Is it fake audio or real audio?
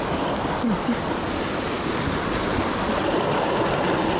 real